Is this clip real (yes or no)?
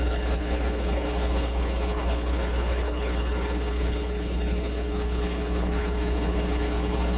no